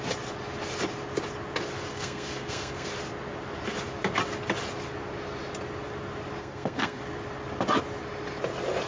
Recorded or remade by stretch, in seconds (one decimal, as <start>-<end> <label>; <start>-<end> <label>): 0.0-1.9 recorded; 1.9-2.9 remade; 2.9-6.4 recorded; 6.4-7.0 remade; 7.0-8.9 recorded

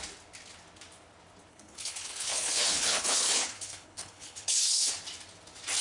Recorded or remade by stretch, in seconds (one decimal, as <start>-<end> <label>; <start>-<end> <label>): 0.0-1.5 recorded; 1.5-4.9 remade; 4.9-5.8 recorded

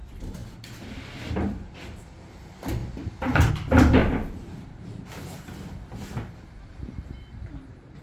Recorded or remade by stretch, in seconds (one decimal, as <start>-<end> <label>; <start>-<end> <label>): 0.0-4.0 recorded; 4.0-7.3 remade; 7.3-8.0 recorded

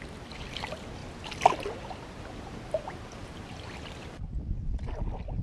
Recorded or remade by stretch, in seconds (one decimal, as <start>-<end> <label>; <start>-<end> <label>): 0.0-5.4 recorded

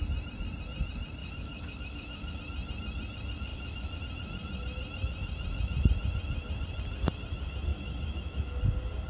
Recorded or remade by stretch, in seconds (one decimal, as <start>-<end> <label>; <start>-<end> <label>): 0.0-1.2 recorded; 1.2-2.4 remade; 2.4-3.5 recorded; 3.5-4.0 remade; 4.0-7.7 recorded; 7.7-8.6 remade; 8.6-9.1 recorded

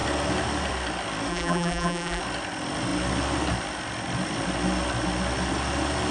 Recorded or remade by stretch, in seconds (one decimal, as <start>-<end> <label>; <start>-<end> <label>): 0.0-1.3 recorded; 1.3-2.2 remade; 2.2-6.1 recorded

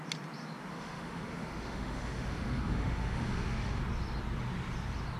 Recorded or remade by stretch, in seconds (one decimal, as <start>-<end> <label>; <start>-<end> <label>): 0.0-0.7 recorded; 0.7-3.8 remade; 3.8-5.2 recorded